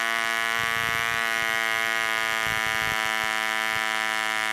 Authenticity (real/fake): real